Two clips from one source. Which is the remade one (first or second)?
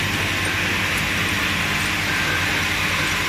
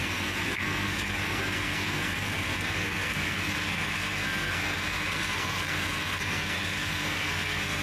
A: second